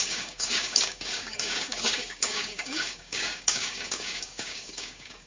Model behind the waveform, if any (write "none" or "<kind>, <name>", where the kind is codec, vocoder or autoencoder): codec, DAC